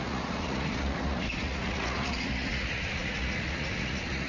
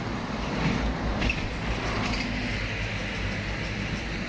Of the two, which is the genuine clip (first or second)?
second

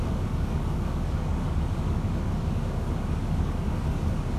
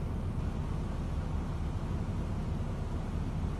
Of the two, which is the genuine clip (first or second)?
second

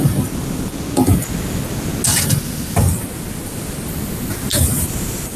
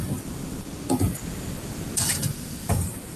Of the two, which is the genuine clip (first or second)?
first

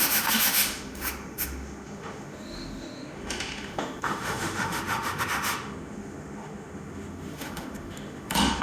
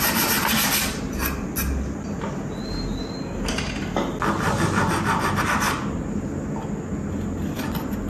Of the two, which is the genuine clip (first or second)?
second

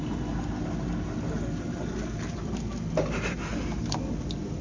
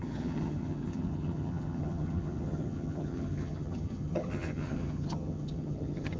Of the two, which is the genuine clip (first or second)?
first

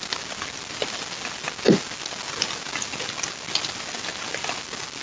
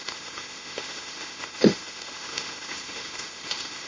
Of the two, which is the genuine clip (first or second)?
first